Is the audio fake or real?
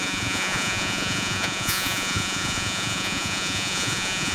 fake